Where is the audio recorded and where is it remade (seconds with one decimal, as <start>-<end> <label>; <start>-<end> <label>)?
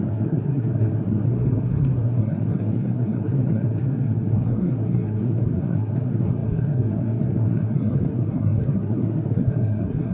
0.0-10.1 remade